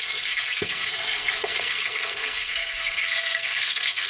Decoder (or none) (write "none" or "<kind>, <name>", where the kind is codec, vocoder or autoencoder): codec, SNAC